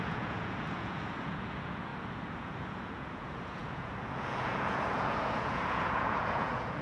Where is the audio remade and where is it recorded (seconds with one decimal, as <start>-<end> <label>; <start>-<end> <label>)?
0.0-6.8 remade